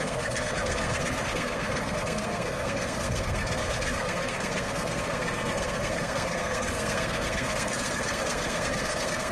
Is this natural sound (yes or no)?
no